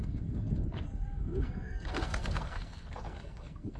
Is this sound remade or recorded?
remade